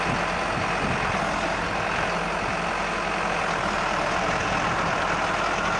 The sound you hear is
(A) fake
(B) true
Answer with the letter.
B